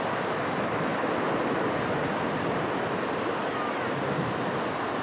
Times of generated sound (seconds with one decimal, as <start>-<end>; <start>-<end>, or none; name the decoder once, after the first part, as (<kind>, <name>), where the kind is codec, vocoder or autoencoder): none